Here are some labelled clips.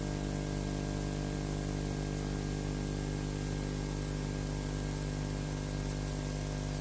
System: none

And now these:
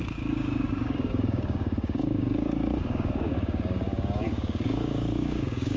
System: codec, DAC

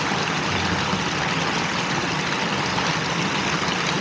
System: none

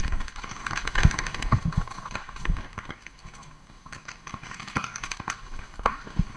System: codec, DAC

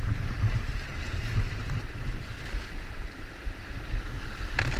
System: none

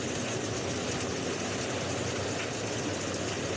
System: none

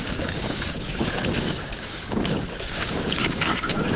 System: codec, DAC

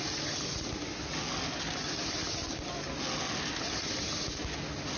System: none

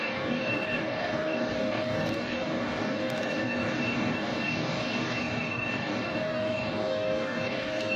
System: codec, DAC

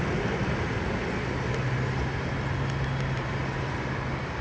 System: none